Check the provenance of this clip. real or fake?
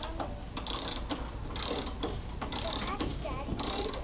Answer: real